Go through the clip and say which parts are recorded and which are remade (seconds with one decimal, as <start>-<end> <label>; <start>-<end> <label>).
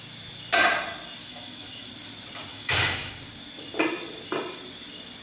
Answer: 0.0-1.2 recorded; 1.2-1.9 remade; 1.9-2.5 recorded; 2.5-3.1 remade; 3.1-5.2 recorded